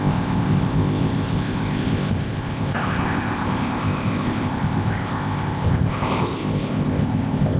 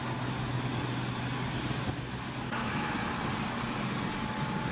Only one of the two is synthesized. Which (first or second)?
first